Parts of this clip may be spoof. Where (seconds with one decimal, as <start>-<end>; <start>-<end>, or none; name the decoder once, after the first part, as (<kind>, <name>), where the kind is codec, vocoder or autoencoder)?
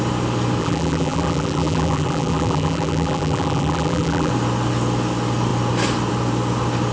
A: 0.6-4.3 (vocoder, BigVGAN v2)